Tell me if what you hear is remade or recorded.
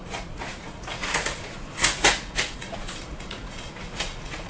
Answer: remade